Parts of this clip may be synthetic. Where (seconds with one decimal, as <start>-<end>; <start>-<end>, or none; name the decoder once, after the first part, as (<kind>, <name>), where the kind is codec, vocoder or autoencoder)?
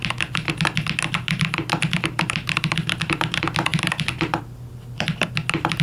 none